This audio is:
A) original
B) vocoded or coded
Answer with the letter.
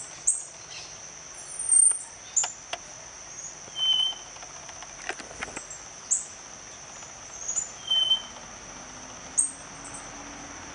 A